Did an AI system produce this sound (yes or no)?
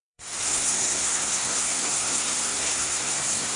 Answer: yes